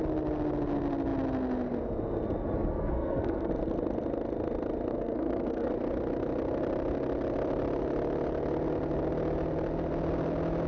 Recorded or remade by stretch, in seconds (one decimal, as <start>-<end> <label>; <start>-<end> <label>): 0.0-2.7 recorded; 2.7-3.5 remade; 3.5-4.9 recorded; 4.9-5.7 remade; 5.7-10.7 recorded